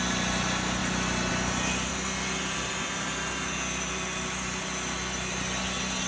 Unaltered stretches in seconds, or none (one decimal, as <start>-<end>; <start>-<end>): 0.0-6.1